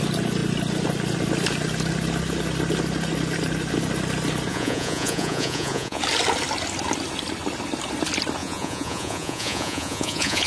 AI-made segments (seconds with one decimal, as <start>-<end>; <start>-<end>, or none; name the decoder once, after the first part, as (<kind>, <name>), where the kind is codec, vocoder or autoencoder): 4.5-6.0 (vocoder, Vocos); 8.4-10.5